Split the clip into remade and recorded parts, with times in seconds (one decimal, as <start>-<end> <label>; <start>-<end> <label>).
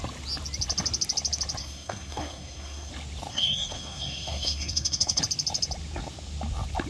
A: 0.0-1.6 recorded; 1.6-2.9 remade; 2.9-3.3 recorded; 3.3-5.2 remade; 5.2-6.9 recorded